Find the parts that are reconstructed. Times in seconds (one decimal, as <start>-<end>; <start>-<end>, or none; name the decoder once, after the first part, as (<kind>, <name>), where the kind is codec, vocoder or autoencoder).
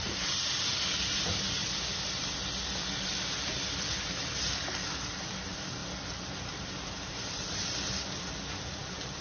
0.0-2.4 (vocoder, BigVGAN v2); 3.1-9.2